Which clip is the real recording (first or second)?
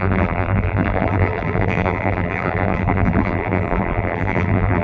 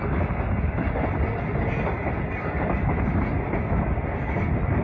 second